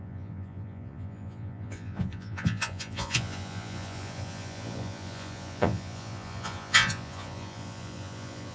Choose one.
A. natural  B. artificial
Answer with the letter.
B